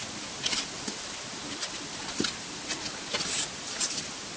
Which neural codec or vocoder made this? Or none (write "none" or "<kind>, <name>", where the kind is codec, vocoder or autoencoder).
none